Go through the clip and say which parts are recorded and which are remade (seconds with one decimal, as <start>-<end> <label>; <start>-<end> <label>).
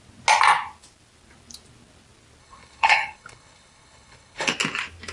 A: 0.0-2.4 recorded; 2.4-4.5 remade; 4.5-5.1 recorded